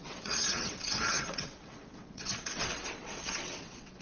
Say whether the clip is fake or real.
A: fake